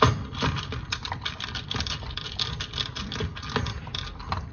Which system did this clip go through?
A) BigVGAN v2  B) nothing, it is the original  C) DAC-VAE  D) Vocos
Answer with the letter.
B